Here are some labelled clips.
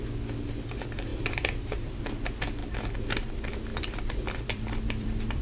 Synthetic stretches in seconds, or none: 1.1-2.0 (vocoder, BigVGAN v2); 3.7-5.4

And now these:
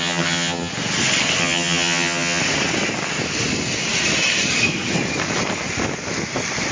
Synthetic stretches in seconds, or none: 0.0-0.7 (vocoder, HiFi-GAN); 1.4-2.4

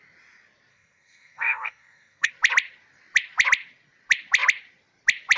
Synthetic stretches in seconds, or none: 0.7-2.3 (codec, SNAC)

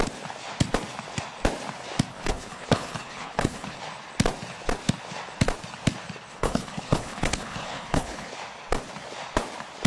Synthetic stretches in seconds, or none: 2.1-3.8 (codec, HILCodec); 6.3-8.3